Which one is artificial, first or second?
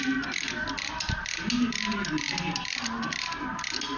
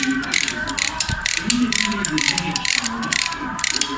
second